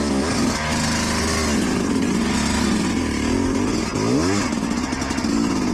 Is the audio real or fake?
real